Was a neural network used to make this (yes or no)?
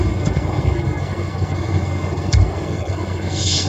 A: yes